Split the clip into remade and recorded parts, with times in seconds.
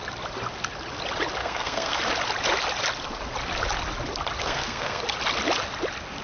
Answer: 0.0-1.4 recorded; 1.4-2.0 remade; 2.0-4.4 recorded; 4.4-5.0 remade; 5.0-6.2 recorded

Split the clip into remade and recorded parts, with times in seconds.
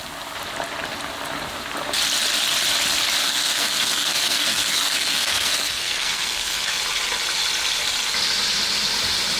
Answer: 0.0-3.2 recorded; 3.2-6.8 remade; 6.8-9.4 recorded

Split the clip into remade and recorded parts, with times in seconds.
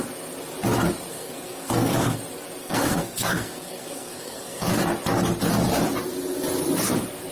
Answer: 0.0-1.1 recorded; 1.1-2.2 remade; 2.2-2.6 recorded; 2.6-4.8 remade; 4.8-7.3 recorded